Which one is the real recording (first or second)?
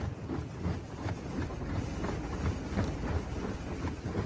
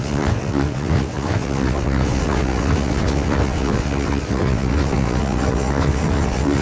first